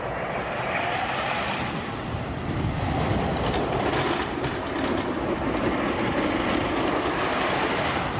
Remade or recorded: recorded